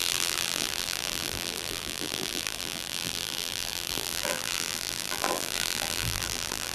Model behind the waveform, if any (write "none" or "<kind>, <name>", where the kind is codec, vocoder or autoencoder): vocoder, BigVGAN v2